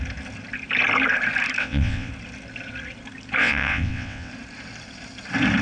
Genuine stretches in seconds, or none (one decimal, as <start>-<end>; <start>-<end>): 0.0-1.6; 2.1-3.4; 4.3-5.6